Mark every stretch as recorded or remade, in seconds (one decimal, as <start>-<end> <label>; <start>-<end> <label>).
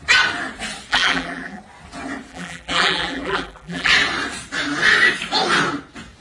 0.0-0.9 recorded; 0.9-1.6 remade; 1.6-2.3 recorded; 2.3-3.9 remade; 3.9-6.2 recorded